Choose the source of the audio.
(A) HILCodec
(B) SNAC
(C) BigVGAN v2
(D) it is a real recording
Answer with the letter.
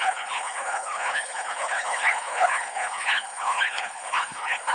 A